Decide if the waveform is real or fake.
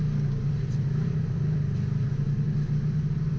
real